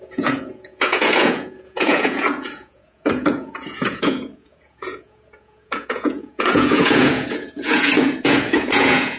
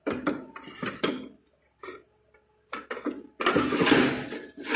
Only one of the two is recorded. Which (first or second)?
second